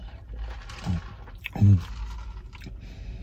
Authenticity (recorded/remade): recorded